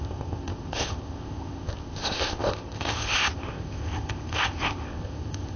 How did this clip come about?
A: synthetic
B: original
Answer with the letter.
A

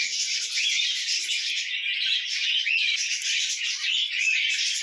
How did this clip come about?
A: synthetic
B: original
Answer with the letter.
B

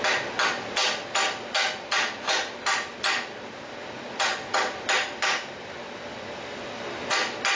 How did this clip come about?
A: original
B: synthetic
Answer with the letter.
A